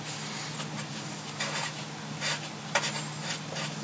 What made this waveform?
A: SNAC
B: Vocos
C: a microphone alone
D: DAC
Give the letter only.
C